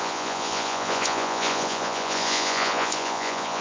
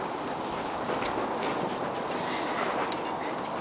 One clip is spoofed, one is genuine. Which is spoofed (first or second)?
first